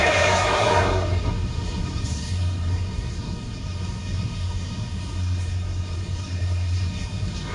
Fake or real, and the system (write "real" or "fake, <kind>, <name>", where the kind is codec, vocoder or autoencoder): fake, codec, SNAC